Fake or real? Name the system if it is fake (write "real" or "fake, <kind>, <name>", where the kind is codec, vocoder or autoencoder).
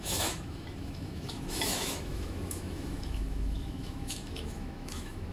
fake, autoencoder, DAC-VAE